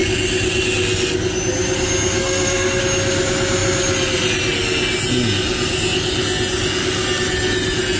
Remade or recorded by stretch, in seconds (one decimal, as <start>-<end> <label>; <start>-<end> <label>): 0.0-2.2 recorded; 2.2-2.8 remade; 2.8-8.0 recorded